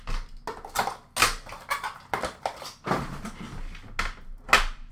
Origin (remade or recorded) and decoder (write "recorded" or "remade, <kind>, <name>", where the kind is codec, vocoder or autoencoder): recorded